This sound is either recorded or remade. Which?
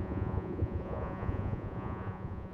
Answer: remade